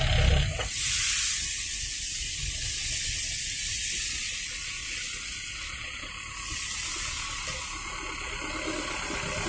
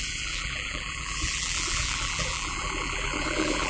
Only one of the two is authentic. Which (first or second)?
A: first